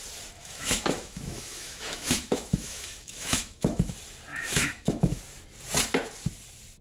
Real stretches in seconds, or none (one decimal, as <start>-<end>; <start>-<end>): 0.0-0.4; 3.9-4.3; 5.2-6.8